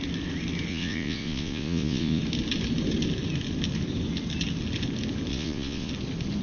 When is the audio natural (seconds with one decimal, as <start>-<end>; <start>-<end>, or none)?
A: 0.0-0.7; 2.2-5.3; 5.9-6.4